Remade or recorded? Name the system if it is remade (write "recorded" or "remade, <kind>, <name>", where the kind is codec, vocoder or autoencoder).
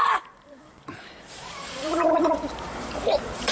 remade, vocoder, BigVGAN v2